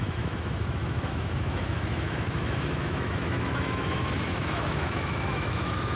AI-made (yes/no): yes